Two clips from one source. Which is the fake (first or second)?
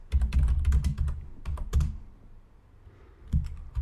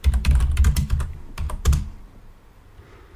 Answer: second